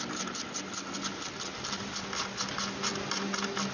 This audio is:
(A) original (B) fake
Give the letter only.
A